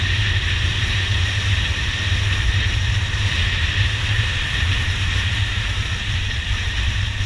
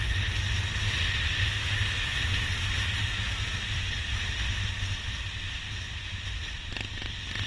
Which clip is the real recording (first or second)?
second